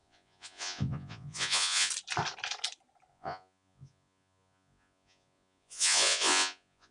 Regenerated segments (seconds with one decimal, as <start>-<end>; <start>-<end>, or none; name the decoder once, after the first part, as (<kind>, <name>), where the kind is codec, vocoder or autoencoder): 0.0-1.9 (vocoder, Vocos); 3.1-6.9